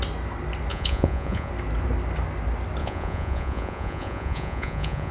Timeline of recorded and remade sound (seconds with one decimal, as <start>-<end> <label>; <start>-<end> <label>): 0.0-0.7 recorded; 0.7-1.5 remade; 1.5-2.8 recorded; 2.8-5.1 remade